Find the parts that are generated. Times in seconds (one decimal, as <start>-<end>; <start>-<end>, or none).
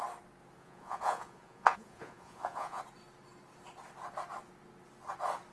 0.6-2.8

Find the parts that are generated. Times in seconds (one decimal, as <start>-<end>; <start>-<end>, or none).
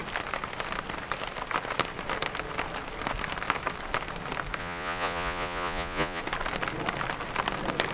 4.6-6.2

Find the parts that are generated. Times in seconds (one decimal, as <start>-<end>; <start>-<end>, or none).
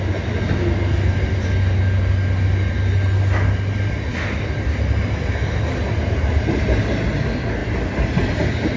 none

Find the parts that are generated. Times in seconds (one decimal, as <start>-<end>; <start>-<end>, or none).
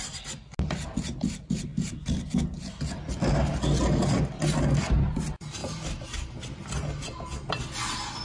none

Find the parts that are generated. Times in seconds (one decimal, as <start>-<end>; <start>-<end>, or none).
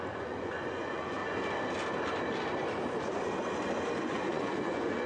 0.0-1.2; 4.0-5.1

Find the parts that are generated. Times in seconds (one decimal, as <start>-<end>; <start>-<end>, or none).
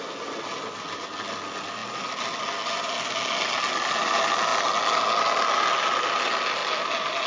none